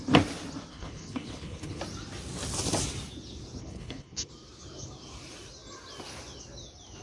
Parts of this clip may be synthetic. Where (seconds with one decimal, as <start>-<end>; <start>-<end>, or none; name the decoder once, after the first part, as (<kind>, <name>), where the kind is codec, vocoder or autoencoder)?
0.7-1.8 (codec, HILCodec); 3.6-4.3